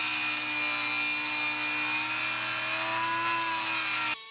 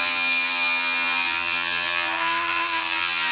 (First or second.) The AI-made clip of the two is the second